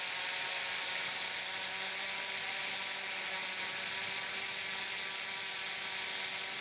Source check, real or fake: real